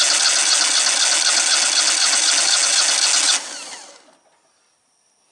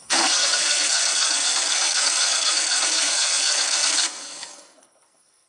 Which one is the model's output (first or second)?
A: second